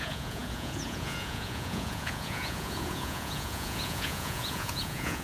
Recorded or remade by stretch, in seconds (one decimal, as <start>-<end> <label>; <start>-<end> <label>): 0.0-5.2 remade